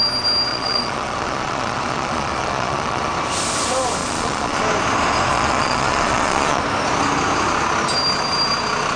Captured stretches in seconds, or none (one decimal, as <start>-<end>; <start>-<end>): 0.0-0.5; 3.1-4.0; 4.6-5.3; 6.6-9.0